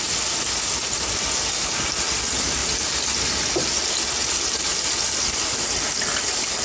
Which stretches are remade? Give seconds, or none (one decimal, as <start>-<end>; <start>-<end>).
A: none